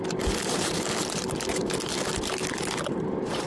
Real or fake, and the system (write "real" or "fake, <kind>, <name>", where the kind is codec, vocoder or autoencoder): real